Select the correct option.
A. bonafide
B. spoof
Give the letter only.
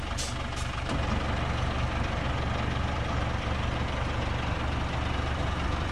A